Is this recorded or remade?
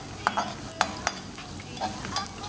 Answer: recorded